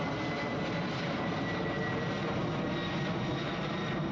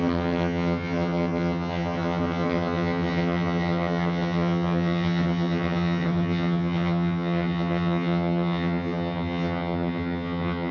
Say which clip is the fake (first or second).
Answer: second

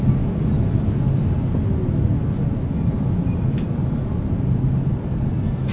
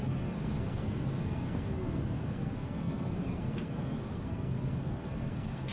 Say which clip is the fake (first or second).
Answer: second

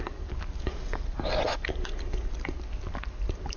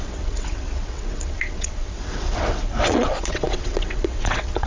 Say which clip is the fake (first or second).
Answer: second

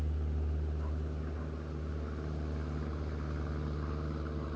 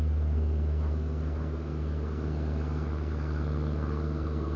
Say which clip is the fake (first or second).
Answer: second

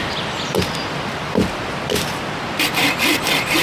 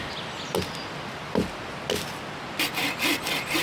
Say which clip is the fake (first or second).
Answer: first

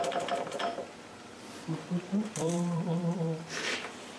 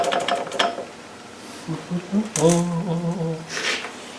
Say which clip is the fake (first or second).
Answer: first